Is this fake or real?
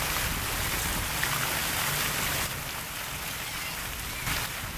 real